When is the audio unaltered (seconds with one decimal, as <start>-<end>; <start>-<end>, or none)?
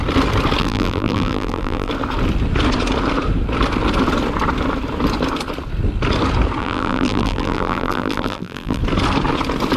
0.0-0.6; 1.9-6.6; 8.8-9.8